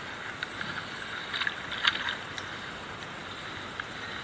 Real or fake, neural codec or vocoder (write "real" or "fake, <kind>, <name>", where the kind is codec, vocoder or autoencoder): real